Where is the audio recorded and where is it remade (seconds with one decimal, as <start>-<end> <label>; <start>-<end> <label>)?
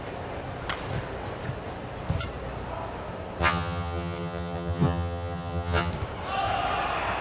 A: 0.0-3.4 recorded; 3.4-5.9 remade; 5.9-7.2 recorded